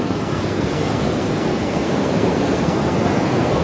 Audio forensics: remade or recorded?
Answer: remade